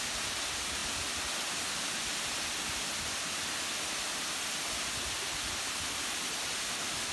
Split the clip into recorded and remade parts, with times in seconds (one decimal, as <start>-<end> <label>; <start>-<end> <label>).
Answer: 0.0-7.1 recorded